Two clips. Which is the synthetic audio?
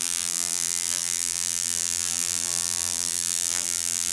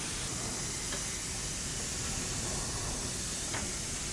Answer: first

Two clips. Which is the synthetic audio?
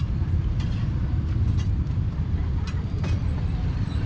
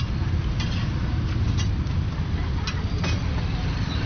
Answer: first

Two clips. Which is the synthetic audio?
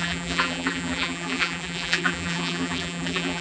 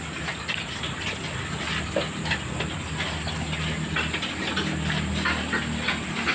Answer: first